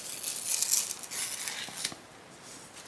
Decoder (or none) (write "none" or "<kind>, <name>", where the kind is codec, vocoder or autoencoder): none